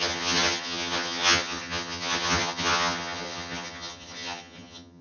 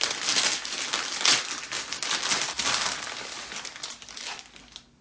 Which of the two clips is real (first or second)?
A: second